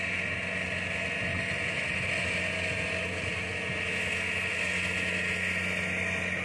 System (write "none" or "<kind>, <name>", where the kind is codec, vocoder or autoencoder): none